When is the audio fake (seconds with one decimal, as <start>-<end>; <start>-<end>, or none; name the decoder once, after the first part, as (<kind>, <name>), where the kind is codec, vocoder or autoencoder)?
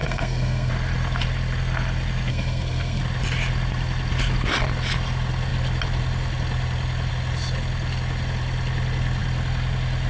0.0-0.7 (codec, SNAC); 2.3-3.0